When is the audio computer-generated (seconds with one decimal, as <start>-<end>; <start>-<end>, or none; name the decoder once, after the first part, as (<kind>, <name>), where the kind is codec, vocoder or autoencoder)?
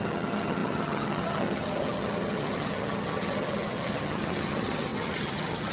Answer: 0.0-5.7 (vocoder, HiFi-GAN)